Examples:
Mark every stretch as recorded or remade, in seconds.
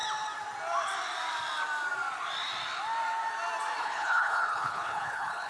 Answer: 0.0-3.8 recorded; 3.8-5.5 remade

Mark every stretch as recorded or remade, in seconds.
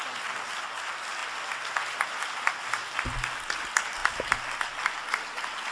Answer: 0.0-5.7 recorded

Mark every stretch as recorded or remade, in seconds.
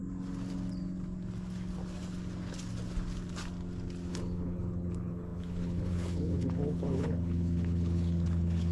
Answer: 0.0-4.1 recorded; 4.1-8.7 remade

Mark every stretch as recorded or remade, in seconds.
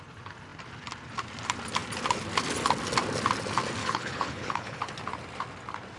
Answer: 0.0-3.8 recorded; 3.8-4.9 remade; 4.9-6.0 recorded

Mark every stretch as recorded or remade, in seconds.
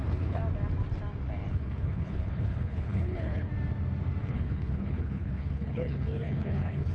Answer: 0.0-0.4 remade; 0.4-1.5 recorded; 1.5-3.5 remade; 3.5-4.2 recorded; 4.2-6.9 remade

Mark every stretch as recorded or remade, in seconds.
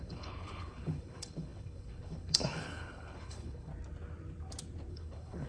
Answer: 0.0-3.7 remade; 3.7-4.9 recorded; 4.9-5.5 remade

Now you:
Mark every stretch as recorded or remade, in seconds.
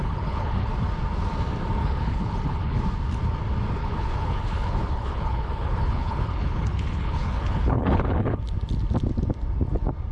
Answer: 0.0-0.7 remade; 0.7-1.8 recorded; 1.8-2.8 remade; 2.8-3.8 recorded; 3.8-8.4 remade; 8.4-10.1 recorded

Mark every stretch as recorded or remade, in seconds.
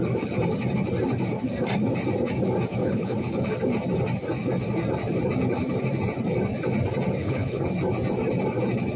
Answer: 0.0-2.8 recorded; 2.8-3.3 remade; 3.3-7.2 recorded; 7.2-7.7 remade; 7.7-9.0 recorded